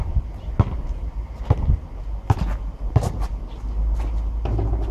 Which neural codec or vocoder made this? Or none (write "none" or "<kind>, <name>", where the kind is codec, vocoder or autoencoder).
none